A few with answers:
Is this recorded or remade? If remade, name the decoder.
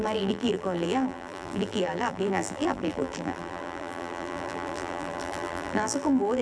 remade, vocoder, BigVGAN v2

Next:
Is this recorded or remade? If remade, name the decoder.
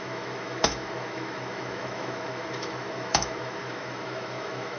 remade, autoencoder, DAC-VAE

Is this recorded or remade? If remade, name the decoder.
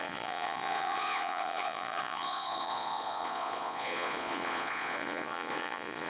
remade, vocoder, Vocos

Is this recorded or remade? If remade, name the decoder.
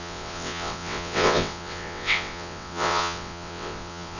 remade, vocoder, WaveNeXt